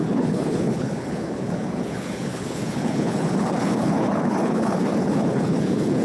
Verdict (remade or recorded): remade